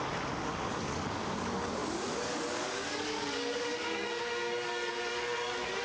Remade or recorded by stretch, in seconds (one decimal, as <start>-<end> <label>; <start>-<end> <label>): 0.0-5.8 remade